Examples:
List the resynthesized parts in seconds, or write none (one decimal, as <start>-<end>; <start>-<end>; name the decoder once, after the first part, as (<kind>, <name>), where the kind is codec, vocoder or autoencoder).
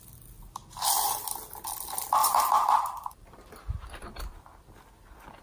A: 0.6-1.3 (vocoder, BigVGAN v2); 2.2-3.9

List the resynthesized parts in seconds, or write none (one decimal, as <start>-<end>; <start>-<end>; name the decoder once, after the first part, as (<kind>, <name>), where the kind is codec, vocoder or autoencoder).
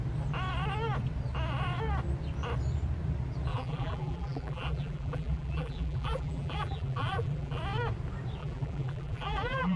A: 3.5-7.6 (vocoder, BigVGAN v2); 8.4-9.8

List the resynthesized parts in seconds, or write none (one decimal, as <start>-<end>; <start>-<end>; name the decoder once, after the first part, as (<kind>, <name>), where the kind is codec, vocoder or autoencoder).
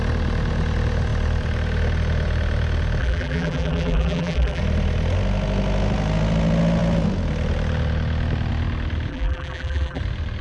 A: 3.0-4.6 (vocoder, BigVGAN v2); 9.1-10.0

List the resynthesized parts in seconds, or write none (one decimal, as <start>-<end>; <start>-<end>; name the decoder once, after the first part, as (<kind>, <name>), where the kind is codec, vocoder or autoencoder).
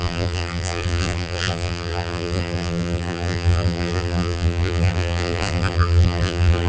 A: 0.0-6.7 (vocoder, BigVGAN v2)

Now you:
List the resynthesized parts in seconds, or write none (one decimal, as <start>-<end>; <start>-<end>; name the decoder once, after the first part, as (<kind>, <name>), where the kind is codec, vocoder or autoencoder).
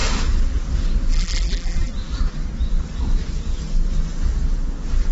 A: 1.1-1.9 (vocoder, BigVGAN v2)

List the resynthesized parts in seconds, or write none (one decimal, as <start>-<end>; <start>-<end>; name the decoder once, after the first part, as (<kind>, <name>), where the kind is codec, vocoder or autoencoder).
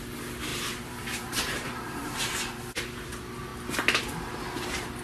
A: 0.5-2.4 (vocoder, BigVGAN v2)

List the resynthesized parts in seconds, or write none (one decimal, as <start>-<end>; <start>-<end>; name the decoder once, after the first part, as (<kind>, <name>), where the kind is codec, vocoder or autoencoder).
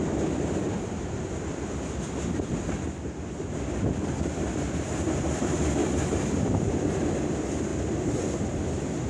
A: 0.0-7.7 (vocoder, BigVGAN v2)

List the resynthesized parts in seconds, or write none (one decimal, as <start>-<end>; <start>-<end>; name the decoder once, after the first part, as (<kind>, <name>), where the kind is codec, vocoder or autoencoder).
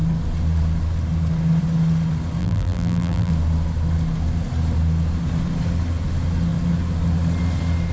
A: 2.4-3.3 (vocoder, BigVGAN v2)